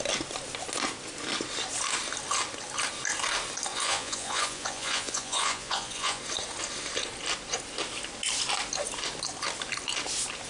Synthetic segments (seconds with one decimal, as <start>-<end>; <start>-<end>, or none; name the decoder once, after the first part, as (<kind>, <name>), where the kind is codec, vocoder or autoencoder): 3.7-6.2 (vocoder, Vocos)